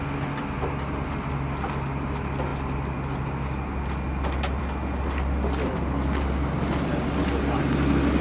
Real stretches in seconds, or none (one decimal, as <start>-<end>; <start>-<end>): 0.0-8.2